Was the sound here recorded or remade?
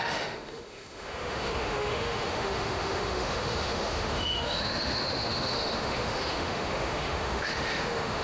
remade